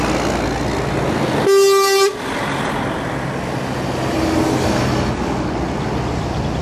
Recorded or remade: recorded